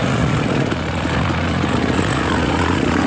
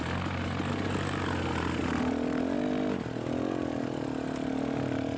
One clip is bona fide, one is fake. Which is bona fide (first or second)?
second